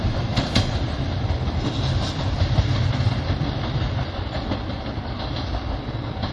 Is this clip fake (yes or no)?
no